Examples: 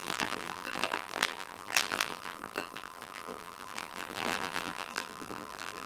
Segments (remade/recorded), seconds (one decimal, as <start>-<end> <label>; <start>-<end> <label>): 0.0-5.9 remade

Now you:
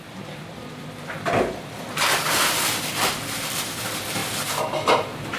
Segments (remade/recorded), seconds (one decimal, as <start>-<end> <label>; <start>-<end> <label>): 0.0-4.2 remade; 4.2-5.4 recorded

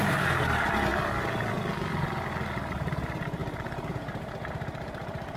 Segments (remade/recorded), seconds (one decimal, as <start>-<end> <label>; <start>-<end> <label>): 0.0-0.9 remade; 0.9-2.7 recorded; 2.7-3.4 remade; 3.4-3.9 recorded; 3.9-5.4 remade

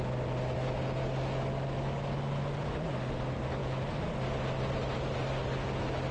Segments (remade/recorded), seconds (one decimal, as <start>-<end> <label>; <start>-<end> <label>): 0.0-6.1 recorded

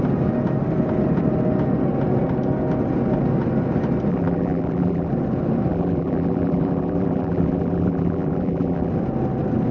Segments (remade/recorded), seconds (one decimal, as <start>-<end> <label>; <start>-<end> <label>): 0.0-4.1 recorded; 4.1-5.1 remade; 5.1-5.7 recorded; 5.7-8.9 remade; 8.9-9.7 recorded

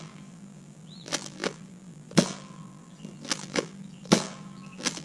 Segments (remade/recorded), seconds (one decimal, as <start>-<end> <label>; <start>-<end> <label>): 0.0-5.0 remade

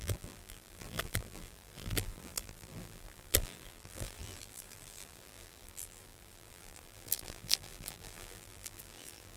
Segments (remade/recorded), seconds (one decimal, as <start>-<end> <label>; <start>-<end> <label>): 0.0-9.4 remade

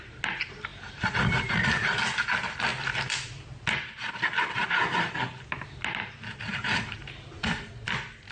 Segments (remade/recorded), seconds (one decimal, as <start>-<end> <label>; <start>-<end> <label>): 0.0-0.7 recorded; 0.7-2.0 remade; 2.0-6.5 recorded; 6.5-7.9 remade; 7.9-8.3 recorded